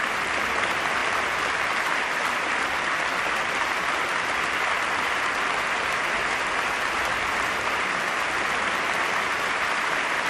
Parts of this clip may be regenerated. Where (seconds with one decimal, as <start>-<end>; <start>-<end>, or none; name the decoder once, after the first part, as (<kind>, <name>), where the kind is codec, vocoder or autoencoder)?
none